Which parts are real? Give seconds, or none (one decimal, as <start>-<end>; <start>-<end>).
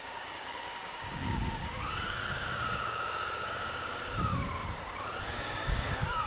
4.6-5.2